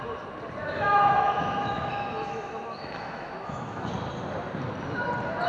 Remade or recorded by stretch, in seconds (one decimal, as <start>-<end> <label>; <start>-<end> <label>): 0.0-0.6 recorded; 0.6-3.9 remade; 3.9-5.5 recorded